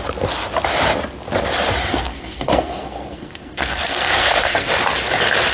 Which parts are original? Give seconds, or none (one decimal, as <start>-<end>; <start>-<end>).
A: 0.0-1.9; 4.7-5.5